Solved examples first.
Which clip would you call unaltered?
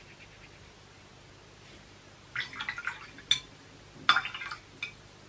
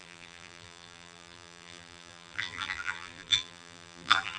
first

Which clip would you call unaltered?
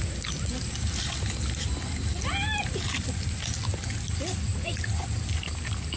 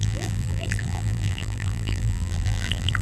first